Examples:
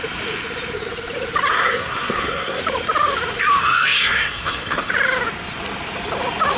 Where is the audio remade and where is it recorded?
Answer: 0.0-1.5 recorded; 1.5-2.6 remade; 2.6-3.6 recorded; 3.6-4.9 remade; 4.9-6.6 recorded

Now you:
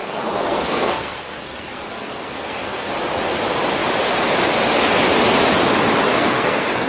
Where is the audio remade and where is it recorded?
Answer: 0.0-2.9 remade; 2.9-6.1 recorded; 6.1-6.9 remade

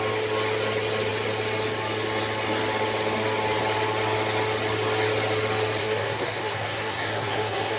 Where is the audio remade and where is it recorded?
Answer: 0.0-5.8 recorded; 5.8-7.8 remade

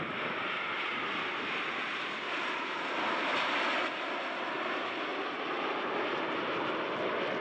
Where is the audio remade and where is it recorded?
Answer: 0.0-7.4 recorded

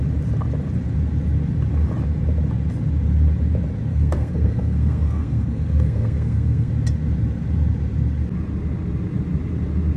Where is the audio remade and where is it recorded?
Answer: 0.0-3.9 recorded; 3.9-6.7 remade; 6.7-10.0 recorded

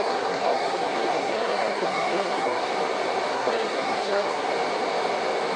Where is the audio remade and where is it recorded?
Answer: 0.0-2.7 remade; 2.7-3.3 recorded; 3.3-4.5 remade; 4.5-5.6 recorded